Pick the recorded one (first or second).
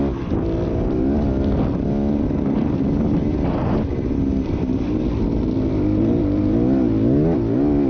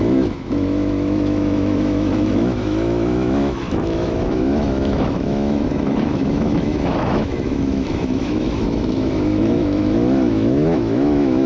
first